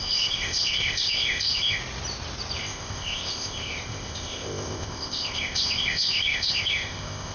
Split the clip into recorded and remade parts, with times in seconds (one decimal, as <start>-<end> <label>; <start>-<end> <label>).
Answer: 0.0-1.8 remade; 1.8-2.6 recorded; 2.6-7.3 remade

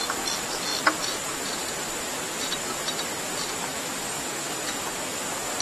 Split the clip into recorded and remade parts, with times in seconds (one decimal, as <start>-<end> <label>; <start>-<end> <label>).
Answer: 0.0-5.6 recorded

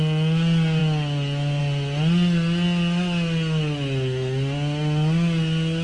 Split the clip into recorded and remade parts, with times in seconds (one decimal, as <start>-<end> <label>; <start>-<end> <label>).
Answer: 0.0-5.8 recorded

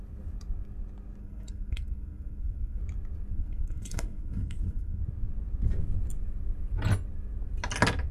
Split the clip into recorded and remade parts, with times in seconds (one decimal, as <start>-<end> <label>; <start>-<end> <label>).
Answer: 0.0-1.2 recorded; 1.2-2.8 remade; 2.8-3.3 recorded; 3.3-5.0 remade; 5.0-8.1 recorded

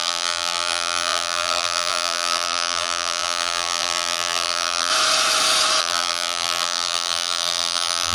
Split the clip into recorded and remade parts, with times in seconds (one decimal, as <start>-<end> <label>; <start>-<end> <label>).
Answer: 0.0-4.9 remade; 4.9-5.8 recorded; 5.8-8.1 remade

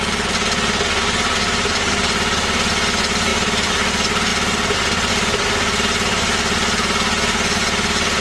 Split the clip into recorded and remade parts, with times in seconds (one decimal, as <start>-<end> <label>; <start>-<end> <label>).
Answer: 0.0-3.3 recorded; 3.3-3.9 remade; 3.9-4.3 recorded; 4.3-5.1 remade; 5.1-8.2 recorded

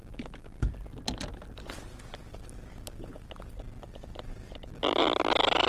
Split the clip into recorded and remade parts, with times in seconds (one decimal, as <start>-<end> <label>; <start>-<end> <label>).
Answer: 0.0-5.7 recorded

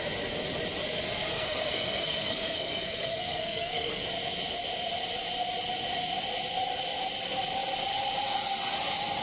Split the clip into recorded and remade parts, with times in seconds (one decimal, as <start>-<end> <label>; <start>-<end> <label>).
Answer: 0.0-1.3 recorded; 1.3-4.0 remade; 4.0-9.2 recorded